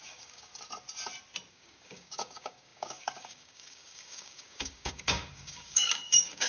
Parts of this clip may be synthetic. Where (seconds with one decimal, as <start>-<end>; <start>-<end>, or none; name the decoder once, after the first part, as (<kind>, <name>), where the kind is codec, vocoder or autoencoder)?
0.0-0.5 (codec, DAC); 1.5-6.5